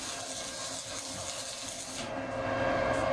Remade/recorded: recorded